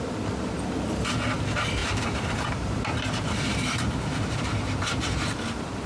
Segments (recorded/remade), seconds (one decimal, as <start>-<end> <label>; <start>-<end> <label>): 0.0-1.8 recorded; 1.8-5.1 remade; 5.1-5.9 recorded